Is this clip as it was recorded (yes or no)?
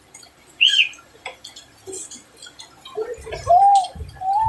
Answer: yes